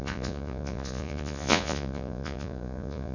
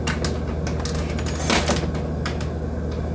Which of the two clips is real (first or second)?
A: second